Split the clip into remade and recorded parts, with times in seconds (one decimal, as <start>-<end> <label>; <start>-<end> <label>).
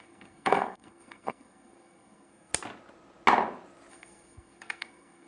0.0-2.5 remade; 2.5-3.9 recorded; 3.9-5.3 remade